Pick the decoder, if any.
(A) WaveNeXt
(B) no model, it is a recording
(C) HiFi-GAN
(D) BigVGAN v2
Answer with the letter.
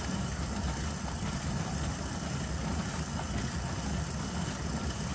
B